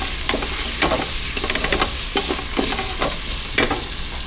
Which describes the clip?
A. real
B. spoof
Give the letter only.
A